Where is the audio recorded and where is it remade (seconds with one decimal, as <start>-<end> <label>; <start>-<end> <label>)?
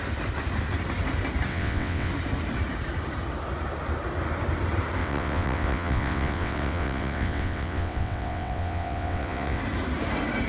0.0-1.5 recorded; 1.5-2.1 remade; 2.1-5.0 recorded; 5.0-9.6 remade; 9.6-10.5 recorded